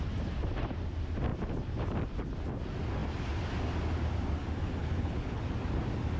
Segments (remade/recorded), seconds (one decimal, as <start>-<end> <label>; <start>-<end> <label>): 0.0-4.8 recorded; 4.8-5.4 remade; 5.4-6.2 recorded